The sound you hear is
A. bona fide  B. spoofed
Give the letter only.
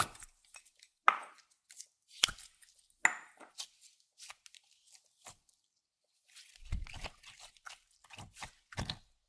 A